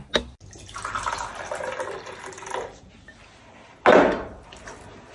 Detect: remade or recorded recorded